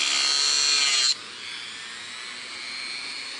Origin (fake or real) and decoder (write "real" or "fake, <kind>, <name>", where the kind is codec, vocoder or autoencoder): real